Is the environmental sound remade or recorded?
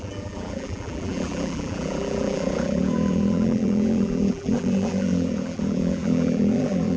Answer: remade